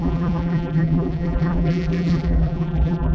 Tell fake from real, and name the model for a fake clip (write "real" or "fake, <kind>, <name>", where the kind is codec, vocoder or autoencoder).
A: fake, vocoder, BigVGAN v2